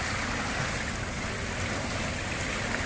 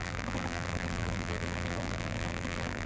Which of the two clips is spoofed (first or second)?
second